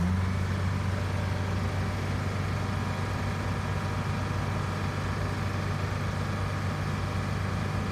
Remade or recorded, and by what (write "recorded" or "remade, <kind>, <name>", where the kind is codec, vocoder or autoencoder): recorded